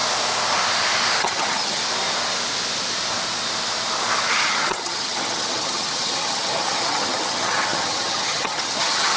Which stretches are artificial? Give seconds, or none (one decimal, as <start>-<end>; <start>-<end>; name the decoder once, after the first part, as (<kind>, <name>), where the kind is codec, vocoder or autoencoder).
1.2-1.8 (vocoder, HiFi-GAN); 4.3-9.2